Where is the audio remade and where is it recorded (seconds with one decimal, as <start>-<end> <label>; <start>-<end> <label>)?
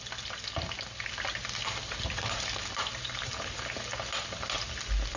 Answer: 0.0-1.6 recorded; 1.6-3.7 remade; 3.7-5.2 recorded